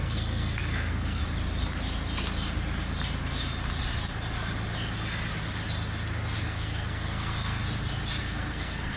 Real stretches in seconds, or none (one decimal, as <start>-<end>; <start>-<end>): 1.2-6.4; 7.6-8.2